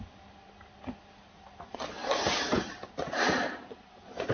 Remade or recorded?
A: recorded